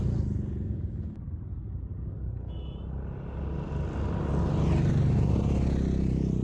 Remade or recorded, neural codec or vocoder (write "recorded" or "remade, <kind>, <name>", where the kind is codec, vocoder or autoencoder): recorded